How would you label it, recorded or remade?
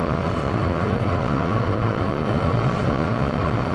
remade